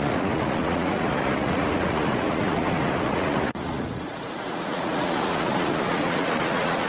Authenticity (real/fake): fake